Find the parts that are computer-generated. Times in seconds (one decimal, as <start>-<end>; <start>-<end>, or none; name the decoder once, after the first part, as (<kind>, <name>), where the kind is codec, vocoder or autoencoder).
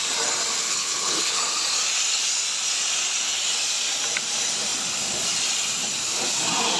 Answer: 0.6-1.4 (codec, HILCodec)